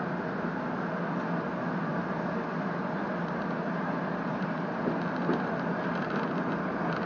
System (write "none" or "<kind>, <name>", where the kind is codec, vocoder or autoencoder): none